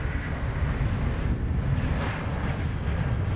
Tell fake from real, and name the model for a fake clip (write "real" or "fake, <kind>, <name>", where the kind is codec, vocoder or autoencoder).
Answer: real